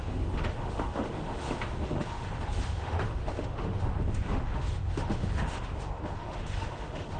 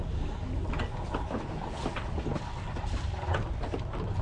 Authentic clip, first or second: second